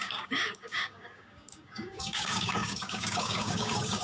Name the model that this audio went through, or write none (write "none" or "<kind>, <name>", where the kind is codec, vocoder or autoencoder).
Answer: codec, DAC